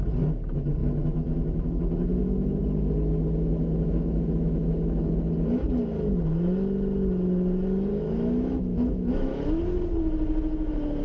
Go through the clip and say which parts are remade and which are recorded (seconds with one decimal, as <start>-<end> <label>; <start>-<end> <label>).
0.0-0.8 recorded; 0.8-5.1 remade; 5.1-7.9 recorded; 7.9-9.5 remade; 9.5-11.0 recorded